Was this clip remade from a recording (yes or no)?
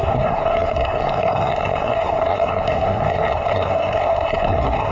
yes